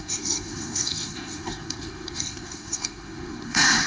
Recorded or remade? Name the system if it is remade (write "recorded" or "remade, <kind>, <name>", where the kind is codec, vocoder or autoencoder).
remade, codec, SNAC